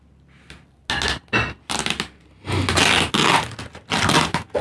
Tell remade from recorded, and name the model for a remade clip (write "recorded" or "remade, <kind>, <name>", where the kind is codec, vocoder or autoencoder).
recorded